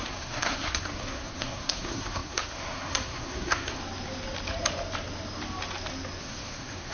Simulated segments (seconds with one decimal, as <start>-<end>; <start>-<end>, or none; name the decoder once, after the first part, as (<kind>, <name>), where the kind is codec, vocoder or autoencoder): 0.0-3.8 (codec, SNAC); 6.2-6.9